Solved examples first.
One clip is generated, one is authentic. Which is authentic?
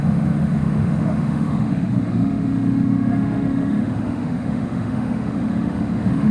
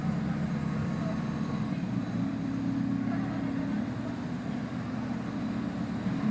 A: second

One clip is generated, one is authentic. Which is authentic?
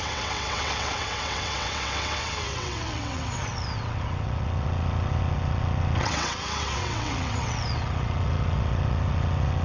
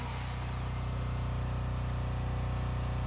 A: second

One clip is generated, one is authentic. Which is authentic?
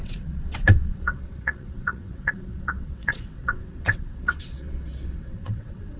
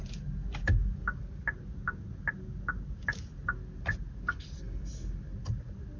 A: second